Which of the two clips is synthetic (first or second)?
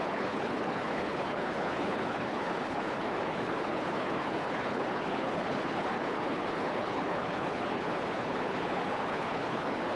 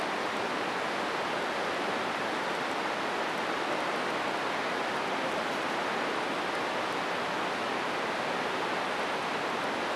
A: first